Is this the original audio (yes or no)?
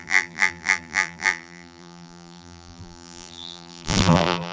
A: no